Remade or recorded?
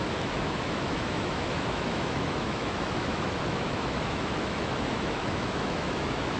remade